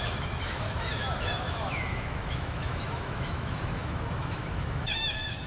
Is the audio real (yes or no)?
no